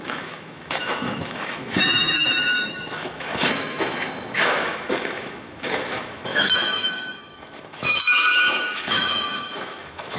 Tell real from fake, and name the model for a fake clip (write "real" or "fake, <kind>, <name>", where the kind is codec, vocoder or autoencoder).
fake, autoencoder, DAC-VAE